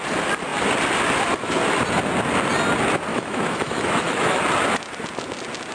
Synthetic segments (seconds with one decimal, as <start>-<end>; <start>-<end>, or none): 3.1-4.4